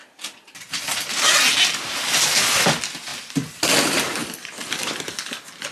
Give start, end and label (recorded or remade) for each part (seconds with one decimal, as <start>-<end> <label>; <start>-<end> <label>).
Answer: 0.0-0.9 remade; 0.9-4.2 recorded; 4.2-5.0 remade; 5.0-5.7 recorded